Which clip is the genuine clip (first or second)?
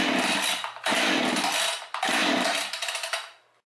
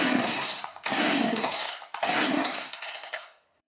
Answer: first